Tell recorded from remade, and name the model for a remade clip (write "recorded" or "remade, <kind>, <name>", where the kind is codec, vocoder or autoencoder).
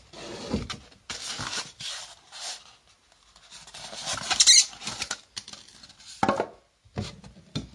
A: recorded